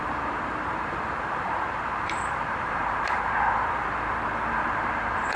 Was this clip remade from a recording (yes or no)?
yes